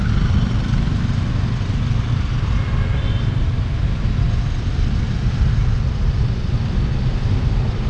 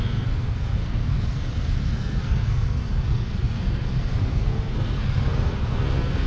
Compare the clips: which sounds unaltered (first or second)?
first